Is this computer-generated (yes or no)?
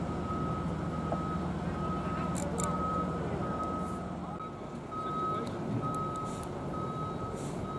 no